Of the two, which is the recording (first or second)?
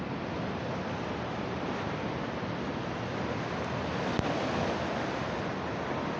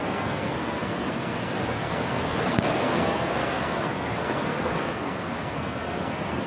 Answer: first